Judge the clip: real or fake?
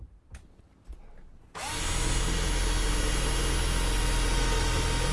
real